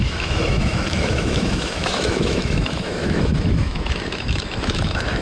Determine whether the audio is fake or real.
fake